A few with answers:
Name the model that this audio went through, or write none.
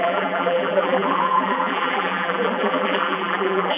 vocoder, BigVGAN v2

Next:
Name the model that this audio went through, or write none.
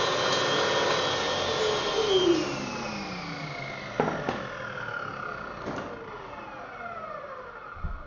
none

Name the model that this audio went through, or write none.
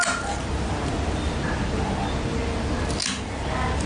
none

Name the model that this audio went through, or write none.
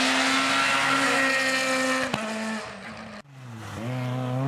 none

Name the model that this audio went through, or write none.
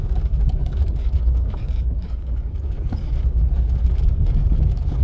codec, DAC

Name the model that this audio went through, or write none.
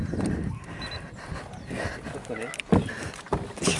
none